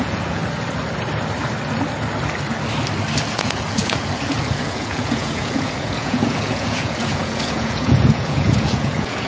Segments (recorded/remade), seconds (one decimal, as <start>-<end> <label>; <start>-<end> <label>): 0.0-0.4 remade; 0.4-3.3 recorded; 3.3-9.3 remade